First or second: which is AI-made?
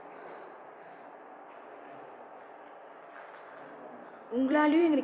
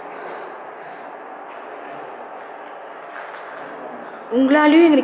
first